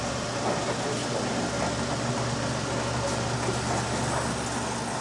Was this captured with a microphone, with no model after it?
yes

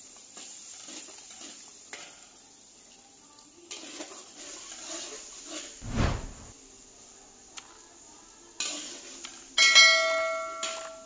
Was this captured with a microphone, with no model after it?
yes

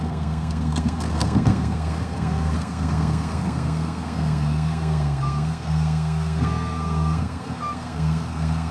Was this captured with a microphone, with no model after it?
no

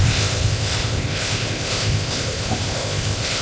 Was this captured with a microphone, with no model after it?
no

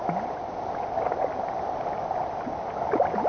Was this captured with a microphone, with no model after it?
yes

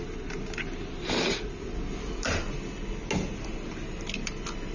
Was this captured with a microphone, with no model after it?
yes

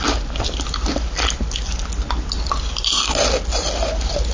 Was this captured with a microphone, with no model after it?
yes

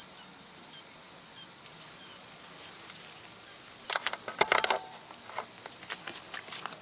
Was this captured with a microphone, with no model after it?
yes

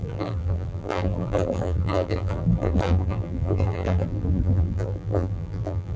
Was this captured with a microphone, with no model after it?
no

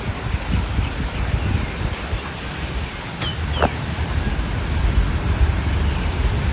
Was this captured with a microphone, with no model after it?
yes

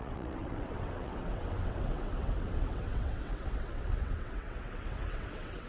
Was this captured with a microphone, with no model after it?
no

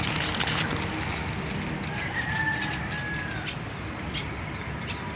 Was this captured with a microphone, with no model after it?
yes